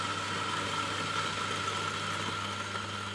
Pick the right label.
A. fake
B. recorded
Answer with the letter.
B